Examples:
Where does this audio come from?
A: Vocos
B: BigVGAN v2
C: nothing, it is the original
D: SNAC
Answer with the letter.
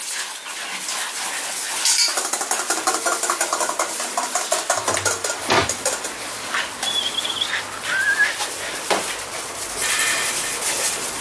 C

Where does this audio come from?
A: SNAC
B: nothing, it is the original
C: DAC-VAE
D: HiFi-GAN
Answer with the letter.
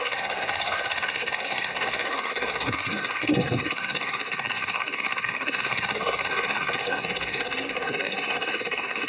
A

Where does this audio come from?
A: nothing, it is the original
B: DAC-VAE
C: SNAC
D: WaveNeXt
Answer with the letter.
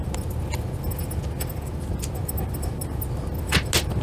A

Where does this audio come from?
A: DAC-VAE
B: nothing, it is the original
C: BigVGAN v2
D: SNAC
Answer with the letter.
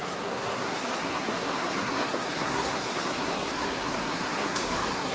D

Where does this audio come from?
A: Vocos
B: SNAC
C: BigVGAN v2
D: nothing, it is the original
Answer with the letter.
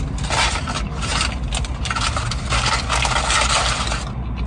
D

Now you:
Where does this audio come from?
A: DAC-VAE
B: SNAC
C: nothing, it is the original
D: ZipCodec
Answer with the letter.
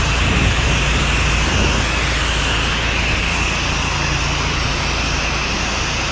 C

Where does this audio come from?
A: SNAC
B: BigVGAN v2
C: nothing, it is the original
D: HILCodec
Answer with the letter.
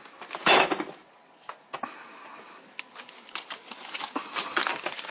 C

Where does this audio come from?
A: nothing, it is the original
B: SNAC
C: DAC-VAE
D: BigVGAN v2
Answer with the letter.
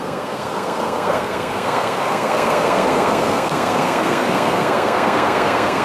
B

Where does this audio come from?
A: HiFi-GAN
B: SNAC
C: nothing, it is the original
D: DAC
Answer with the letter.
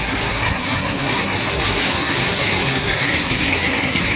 B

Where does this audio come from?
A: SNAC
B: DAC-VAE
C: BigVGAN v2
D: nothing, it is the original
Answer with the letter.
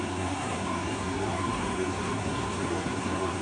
A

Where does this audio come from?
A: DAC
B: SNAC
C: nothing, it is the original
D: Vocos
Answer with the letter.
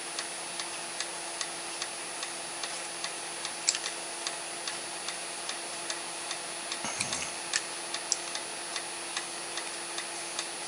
C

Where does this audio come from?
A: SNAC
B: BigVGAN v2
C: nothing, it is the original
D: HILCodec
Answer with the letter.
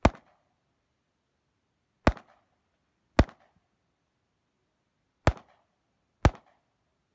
C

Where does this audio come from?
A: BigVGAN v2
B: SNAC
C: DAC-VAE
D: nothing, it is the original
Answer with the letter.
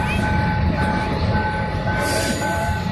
D